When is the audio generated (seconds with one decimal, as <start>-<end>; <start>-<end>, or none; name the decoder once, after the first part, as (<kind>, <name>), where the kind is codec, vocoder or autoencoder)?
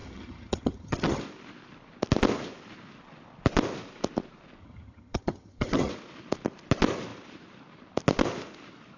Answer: 0.0-1.2 (vocoder, HiFi-GAN); 4.6-5.9